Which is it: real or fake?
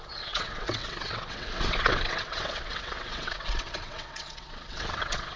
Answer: fake